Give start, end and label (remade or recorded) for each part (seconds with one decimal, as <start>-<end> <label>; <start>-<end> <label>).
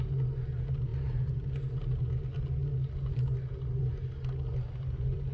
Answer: 0.0-5.3 recorded